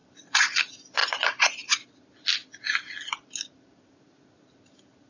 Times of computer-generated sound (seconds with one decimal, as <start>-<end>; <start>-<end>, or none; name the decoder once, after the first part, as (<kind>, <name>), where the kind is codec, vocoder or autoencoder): 0.0-0.6 (vocoder, BigVGAN v2); 1.0-1.9